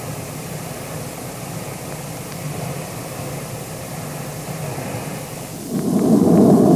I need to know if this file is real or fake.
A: fake